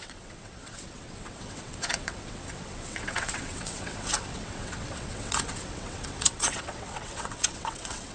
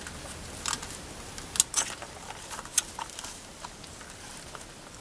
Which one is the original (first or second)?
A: second